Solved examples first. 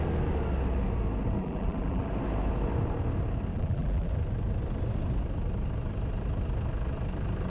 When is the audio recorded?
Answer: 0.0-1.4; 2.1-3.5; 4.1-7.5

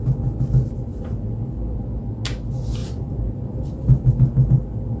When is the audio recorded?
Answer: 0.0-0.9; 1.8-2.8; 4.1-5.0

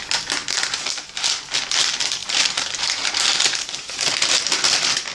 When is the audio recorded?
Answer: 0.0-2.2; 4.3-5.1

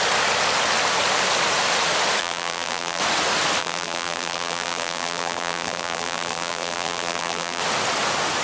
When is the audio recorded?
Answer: 0.0-2.2; 3.0-3.6; 7.6-8.4

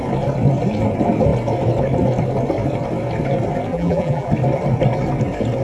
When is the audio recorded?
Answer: 0.0-3.7; 4.3-5.6